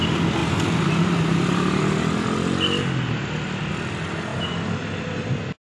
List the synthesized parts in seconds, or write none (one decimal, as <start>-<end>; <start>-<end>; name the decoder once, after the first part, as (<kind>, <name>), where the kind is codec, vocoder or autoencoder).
none